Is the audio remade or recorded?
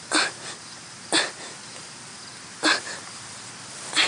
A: recorded